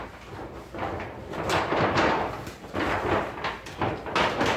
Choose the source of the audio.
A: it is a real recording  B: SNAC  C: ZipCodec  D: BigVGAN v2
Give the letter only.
A